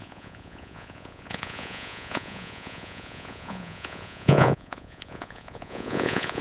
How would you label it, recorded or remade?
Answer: remade